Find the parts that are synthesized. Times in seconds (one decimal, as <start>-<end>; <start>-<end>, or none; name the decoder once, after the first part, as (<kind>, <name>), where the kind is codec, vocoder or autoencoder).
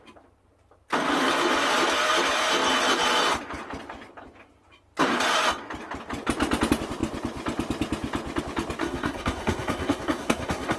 8.8-10.8 (codec, SNAC)